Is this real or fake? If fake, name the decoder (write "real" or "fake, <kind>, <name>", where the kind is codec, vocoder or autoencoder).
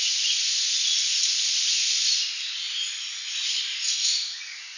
real